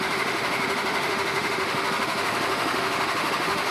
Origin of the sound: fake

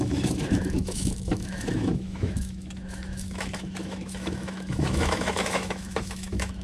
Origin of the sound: fake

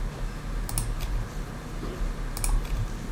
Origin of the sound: real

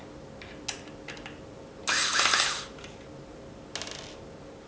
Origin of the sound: real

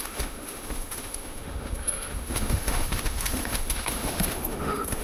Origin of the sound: fake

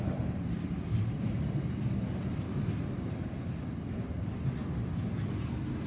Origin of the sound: real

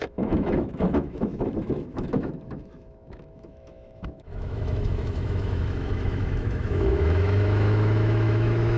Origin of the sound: fake